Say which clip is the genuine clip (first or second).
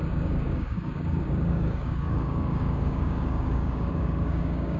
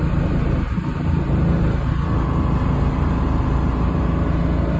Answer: second